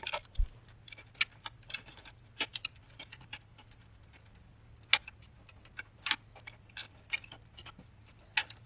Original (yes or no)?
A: yes